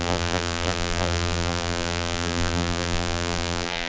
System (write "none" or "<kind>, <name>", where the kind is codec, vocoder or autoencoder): vocoder, BigVGAN v2